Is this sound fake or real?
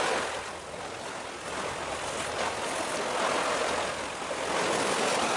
real